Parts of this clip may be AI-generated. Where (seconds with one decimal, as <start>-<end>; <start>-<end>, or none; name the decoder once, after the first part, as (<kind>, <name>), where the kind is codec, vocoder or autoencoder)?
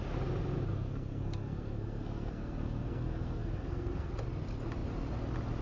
0.7-4.1 (codec, SNAC)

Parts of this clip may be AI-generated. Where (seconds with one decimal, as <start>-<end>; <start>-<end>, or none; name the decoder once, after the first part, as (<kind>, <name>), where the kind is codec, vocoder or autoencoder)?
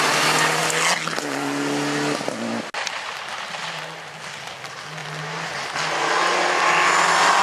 none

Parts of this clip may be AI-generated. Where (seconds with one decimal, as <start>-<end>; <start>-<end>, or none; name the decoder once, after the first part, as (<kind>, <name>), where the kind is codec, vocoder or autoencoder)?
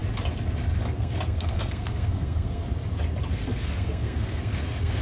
1.0-2.6 (codec, SNAC); 3.3-5.0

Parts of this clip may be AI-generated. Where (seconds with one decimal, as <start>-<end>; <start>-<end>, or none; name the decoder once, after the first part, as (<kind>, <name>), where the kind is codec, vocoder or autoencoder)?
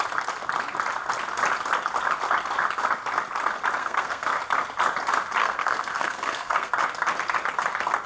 3.8-4.4 (codec, SNAC); 5.4-6.7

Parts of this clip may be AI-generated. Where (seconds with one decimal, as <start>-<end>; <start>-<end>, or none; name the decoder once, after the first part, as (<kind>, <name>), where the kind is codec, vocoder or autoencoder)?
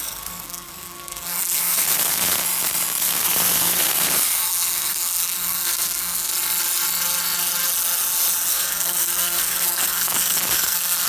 0.0-2.4 (codec, SNAC); 3.0-6.3; 8.5-11.1